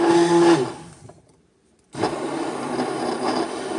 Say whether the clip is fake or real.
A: real